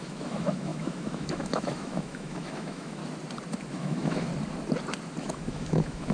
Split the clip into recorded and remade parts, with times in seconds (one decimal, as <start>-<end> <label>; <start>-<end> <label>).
0.0-3.0 remade; 3.0-3.7 recorded; 3.7-4.3 remade; 4.3-5.2 recorded; 5.2-6.1 remade